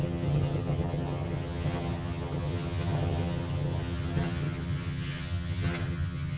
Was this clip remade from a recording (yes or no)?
yes